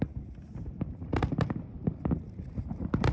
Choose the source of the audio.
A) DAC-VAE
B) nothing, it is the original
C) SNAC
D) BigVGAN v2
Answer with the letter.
B